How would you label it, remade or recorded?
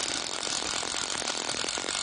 recorded